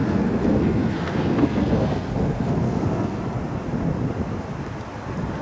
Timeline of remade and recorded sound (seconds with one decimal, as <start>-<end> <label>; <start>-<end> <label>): 0.0-3.2 remade; 3.2-5.4 recorded